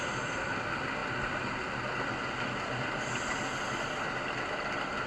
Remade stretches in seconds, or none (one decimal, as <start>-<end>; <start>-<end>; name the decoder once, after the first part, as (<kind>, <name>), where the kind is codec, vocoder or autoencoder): none